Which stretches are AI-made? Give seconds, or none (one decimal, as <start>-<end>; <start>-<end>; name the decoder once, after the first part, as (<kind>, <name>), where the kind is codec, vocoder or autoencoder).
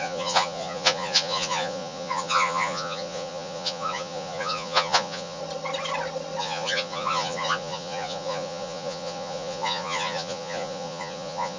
0.0-5.4 (vocoder, Vocos); 6.4-11.6